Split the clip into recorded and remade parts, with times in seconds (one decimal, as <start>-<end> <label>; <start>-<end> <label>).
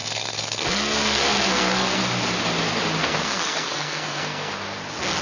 0.0-2.0 remade; 2.0-3.0 recorded; 3.0-4.5 remade; 4.5-5.2 recorded